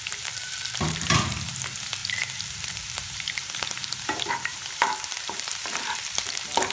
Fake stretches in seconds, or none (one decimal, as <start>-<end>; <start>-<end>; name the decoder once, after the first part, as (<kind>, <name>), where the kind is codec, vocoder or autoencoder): 0.0-6.7 (vocoder, BigVGAN v2)